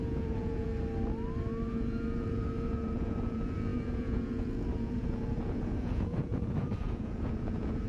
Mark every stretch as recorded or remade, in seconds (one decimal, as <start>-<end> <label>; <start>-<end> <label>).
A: 0.0-0.7 remade; 0.7-1.7 recorded; 1.7-7.9 remade